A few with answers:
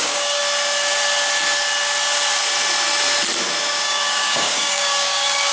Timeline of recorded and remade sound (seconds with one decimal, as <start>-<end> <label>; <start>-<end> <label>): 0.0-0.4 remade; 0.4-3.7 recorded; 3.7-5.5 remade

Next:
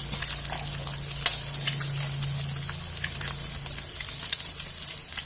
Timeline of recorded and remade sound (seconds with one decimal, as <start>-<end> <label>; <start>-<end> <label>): 0.0-5.3 recorded

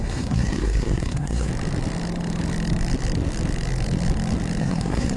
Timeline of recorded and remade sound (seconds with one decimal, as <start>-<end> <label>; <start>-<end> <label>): 0.0-1.5 remade; 1.5-4.6 recorded; 4.6-5.2 remade

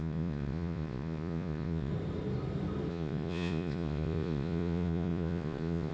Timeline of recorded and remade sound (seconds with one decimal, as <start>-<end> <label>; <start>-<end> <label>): 0.0-1.9 remade; 1.9-2.9 recorded; 2.9-5.9 remade